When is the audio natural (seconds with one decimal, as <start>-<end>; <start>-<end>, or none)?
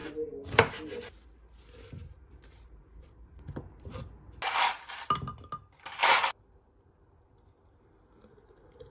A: 0.7-2.1; 4.0-6.0; 6.7-8.9